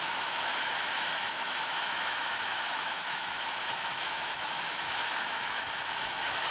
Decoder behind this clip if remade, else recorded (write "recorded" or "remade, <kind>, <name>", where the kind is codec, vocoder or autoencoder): remade, autoencoder, DAC-VAE